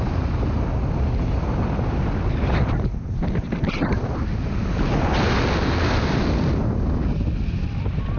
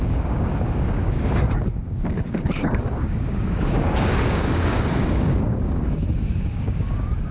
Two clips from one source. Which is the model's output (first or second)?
second